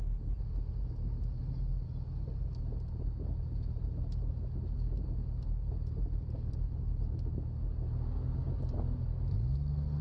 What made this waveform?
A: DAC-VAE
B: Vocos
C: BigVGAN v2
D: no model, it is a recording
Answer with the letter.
D